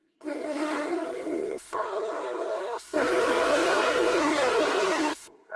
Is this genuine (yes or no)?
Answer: no